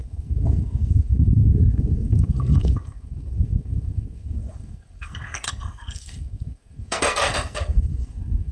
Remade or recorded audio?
remade